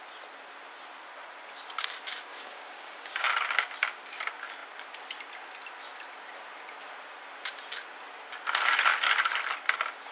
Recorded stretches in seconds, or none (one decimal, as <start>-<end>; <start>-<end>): 0.0-2.3; 3.3-10.1